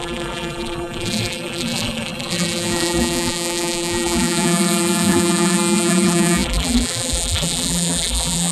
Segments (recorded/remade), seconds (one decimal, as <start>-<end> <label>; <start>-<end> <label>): 0.0-8.5 remade